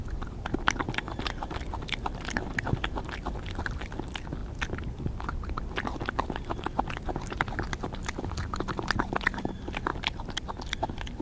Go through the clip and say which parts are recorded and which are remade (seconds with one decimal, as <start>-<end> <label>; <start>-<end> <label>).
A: 0.0-11.2 recorded